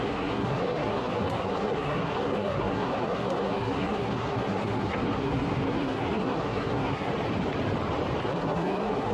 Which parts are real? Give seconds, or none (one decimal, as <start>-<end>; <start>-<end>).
7.1-8.2